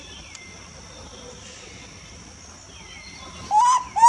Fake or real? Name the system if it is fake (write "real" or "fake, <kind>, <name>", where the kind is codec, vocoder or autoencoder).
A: real